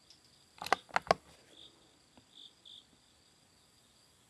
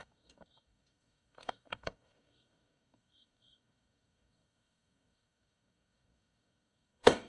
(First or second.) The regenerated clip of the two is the second